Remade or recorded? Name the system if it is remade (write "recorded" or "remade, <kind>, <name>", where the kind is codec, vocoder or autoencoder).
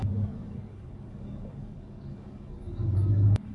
remade, codec, DAC